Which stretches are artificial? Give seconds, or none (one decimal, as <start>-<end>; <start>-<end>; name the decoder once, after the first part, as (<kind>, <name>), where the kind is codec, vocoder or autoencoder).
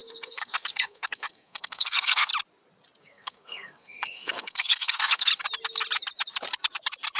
0.0-2.3 (codec, SNAC); 3.0-5.3